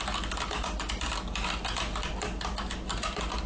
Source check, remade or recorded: recorded